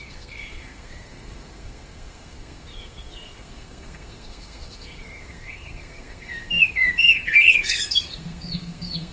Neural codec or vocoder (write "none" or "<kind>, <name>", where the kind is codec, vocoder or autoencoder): codec, SNAC